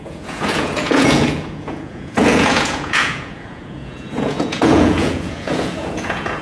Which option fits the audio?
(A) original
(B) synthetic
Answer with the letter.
B